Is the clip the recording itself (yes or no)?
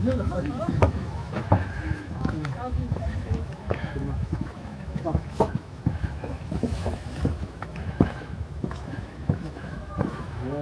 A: no